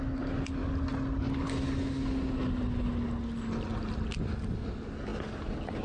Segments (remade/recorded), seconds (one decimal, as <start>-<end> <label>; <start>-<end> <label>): 0.0-5.8 recorded